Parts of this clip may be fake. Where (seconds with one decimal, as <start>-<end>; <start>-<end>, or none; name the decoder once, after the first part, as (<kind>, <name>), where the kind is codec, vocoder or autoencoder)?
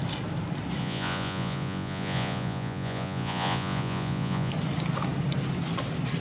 0.8-4.5 (vocoder, Vocos)